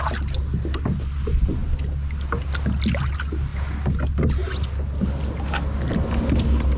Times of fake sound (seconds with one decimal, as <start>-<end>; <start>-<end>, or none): none